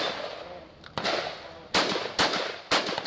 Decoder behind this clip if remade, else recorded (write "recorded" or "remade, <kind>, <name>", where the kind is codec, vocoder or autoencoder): recorded